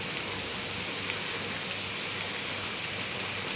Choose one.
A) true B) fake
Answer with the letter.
A